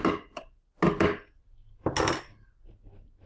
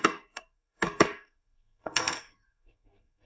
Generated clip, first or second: second